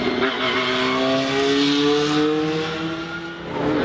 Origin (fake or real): real